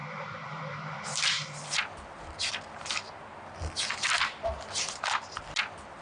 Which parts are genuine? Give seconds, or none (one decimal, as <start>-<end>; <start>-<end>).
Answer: 0.0-6.0